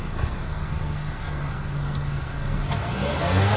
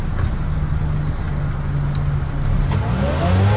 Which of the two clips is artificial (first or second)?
first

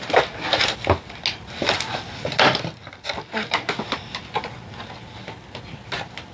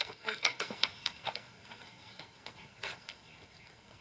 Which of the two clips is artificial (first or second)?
second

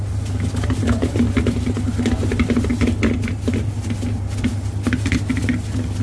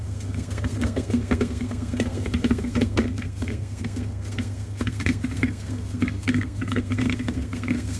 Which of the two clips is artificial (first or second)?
second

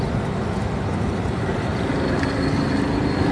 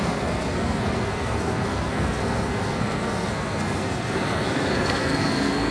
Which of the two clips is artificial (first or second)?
second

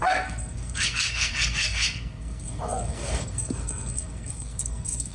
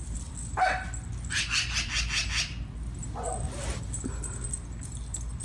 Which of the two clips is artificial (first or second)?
first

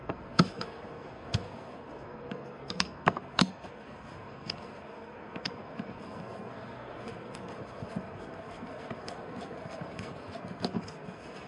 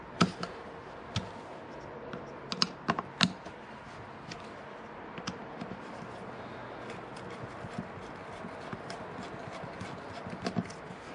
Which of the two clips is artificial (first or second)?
first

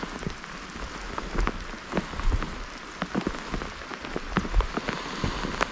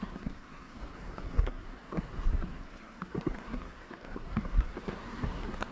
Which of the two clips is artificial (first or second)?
second